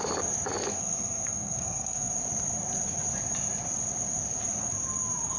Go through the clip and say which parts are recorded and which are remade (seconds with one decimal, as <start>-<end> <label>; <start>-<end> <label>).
0.0-0.7 recorded; 0.7-2.1 remade; 2.1-5.4 recorded